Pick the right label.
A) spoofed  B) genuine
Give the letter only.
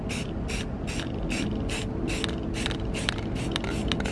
B